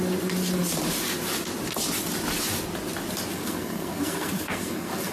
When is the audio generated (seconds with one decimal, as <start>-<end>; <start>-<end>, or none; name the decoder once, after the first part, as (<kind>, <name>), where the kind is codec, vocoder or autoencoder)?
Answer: 3.3-5.1 (codec, SNAC)